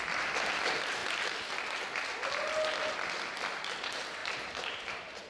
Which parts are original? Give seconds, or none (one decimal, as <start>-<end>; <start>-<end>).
0.0-4.2